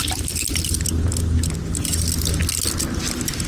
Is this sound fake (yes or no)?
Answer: no